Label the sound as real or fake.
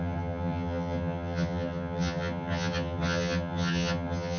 fake